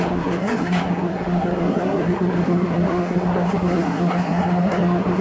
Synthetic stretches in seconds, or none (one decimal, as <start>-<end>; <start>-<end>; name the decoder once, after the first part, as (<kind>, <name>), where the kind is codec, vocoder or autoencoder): 0.0-5.2 (codec, SNAC)